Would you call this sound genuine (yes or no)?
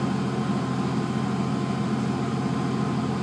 yes